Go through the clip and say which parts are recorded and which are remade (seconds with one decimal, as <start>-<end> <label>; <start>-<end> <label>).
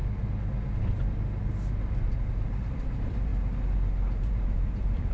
0.0-2.0 recorded; 2.0-3.3 remade; 3.3-4.2 recorded; 4.2-5.1 remade